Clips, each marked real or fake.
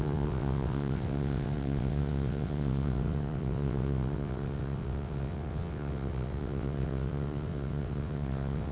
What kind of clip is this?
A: fake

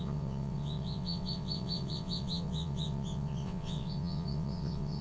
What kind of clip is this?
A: fake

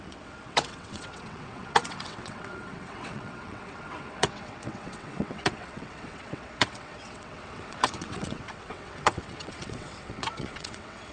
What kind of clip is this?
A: fake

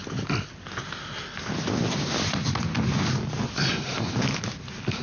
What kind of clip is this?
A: real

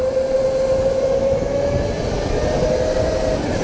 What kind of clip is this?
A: real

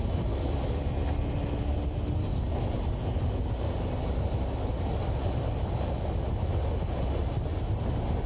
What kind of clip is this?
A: real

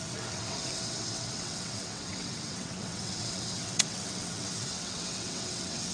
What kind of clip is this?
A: fake